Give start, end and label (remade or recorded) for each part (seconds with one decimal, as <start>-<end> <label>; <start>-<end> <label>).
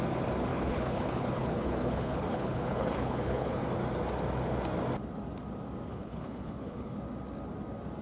0.0-0.5 recorded; 0.5-3.6 remade; 3.6-5.9 recorded; 5.9-7.0 remade; 7.0-8.0 recorded